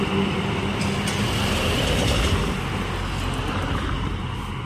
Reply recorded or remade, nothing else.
recorded